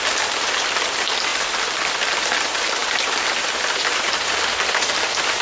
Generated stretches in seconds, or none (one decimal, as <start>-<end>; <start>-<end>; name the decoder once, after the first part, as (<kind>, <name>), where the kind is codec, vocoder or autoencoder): 1.3-1.9 (vocoder, BigVGAN v2); 2.8-4.4